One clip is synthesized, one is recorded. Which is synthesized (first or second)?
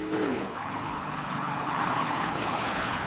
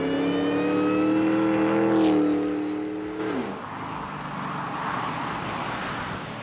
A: first